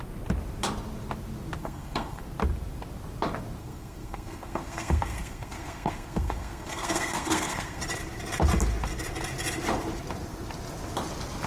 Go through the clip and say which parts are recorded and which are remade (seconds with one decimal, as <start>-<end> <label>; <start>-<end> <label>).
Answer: 0.0-1.6 recorded; 1.6-2.2 remade; 2.2-3.6 recorded; 3.6-7.8 remade; 7.8-11.5 recorded